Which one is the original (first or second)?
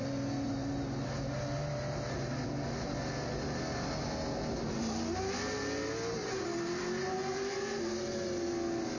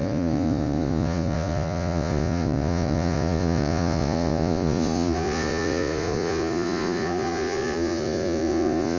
first